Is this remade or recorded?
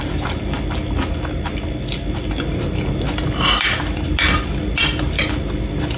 recorded